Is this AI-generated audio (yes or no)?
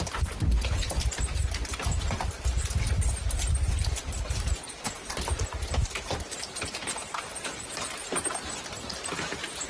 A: yes